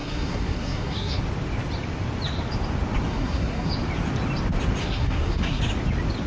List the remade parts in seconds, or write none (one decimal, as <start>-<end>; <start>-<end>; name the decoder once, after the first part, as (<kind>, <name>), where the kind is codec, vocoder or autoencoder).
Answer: 0.0-1.2 (codec, SNAC); 3.1-3.7; 4.8-5.6